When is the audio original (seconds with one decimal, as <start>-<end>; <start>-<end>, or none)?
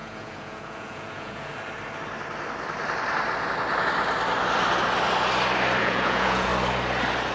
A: 1.5-5.8; 6.5-7.3